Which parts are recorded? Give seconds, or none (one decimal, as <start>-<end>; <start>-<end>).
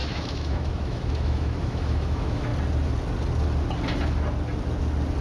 2.5-5.2